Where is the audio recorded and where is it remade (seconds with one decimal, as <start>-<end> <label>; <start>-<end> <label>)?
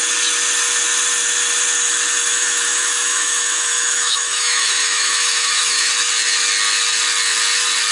0.0-2.3 recorded; 2.3-5.9 remade; 5.9-7.9 recorded